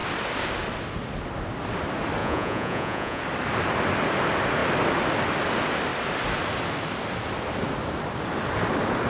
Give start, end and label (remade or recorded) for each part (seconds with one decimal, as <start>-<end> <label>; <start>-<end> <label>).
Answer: 0.0-2.2 recorded; 2.2-3.2 remade; 3.2-9.1 recorded